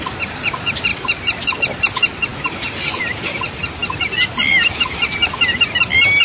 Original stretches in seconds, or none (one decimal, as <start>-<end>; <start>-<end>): 0.0-6.2

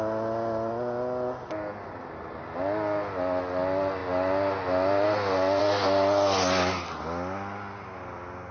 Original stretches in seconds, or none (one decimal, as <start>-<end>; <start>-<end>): 0.0-8.5